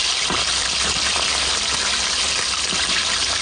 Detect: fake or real real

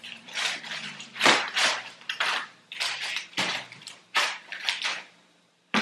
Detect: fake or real fake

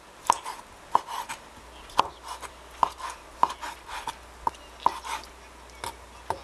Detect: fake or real real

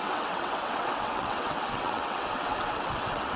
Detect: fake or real fake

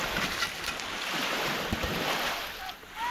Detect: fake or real real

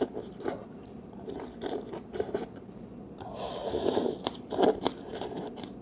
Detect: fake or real fake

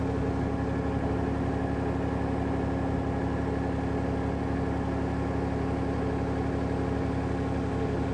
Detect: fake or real real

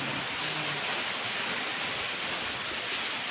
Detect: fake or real real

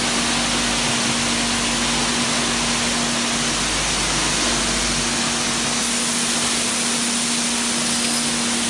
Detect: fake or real real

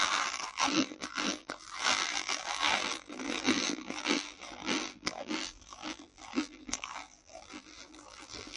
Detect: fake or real fake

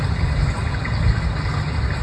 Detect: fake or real real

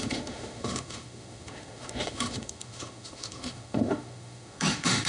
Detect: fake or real fake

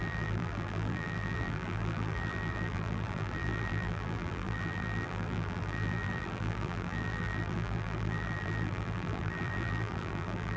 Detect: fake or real fake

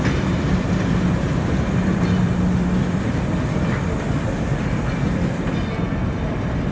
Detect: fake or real fake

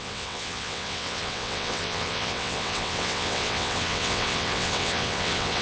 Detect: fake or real fake